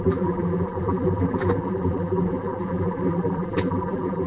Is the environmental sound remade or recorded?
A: remade